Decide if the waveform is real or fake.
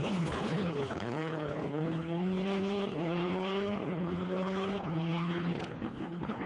fake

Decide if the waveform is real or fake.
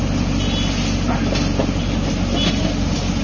real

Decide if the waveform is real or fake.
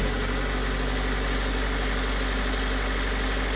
real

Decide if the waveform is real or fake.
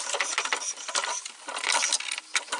real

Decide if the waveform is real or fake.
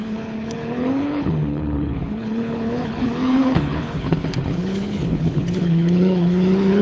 fake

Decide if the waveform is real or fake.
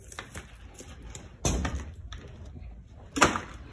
real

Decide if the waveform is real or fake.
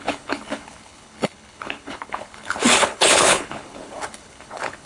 fake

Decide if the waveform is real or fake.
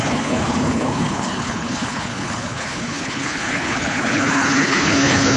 fake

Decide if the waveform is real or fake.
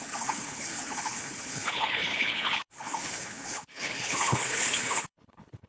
fake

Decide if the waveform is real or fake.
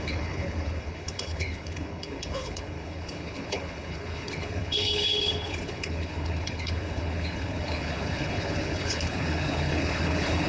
fake